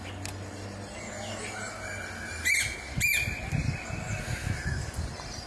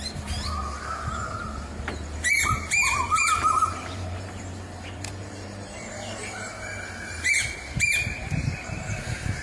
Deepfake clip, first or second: second